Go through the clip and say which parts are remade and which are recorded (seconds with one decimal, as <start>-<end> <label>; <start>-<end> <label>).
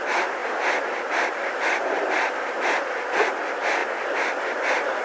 0.0-5.0 recorded